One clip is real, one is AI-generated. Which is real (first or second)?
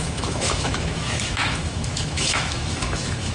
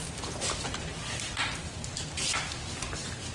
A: second